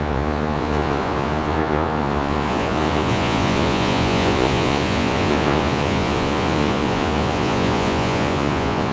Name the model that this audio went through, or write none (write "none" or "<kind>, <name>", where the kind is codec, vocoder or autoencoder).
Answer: vocoder, Vocos